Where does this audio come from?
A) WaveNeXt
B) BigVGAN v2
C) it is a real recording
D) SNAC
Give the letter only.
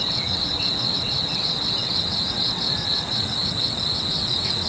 A